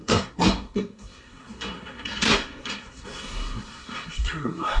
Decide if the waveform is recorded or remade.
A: remade